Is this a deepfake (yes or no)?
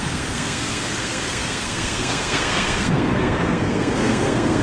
yes